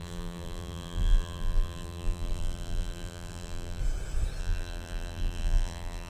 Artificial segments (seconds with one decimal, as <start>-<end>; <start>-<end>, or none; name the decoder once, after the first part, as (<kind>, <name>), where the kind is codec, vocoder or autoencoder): 0.0-3.8 (vocoder, BigVGAN v2); 4.4-6.1